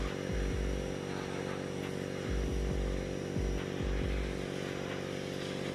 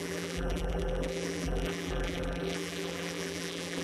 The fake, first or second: second